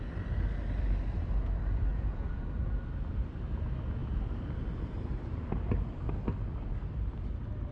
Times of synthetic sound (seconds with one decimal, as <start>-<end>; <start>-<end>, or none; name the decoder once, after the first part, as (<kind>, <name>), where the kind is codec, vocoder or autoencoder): 1.9-2.8 (vocoder, Vocos)